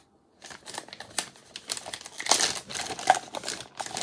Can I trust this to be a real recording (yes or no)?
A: yes